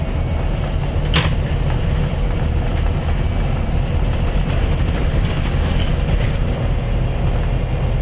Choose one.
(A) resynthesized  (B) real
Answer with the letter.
B